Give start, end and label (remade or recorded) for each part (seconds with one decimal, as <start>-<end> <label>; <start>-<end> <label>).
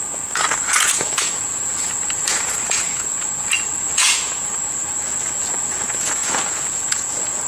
0.0-7.5 remade